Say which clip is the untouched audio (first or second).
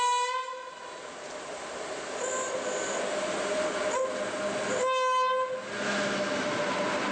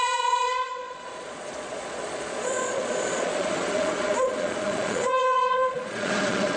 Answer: first